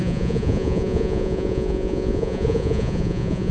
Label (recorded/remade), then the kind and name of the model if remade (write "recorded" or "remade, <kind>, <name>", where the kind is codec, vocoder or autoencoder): remade, vocoder, Vocos